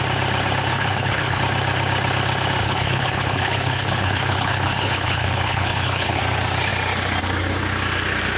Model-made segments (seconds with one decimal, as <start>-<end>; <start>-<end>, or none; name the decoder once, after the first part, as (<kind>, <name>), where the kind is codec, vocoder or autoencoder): 0.7-1.4 (codec, HILCodec); 2.6-6.2